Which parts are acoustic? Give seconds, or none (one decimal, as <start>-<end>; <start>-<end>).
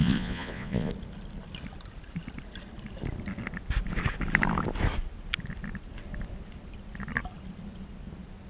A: 0.9-8.5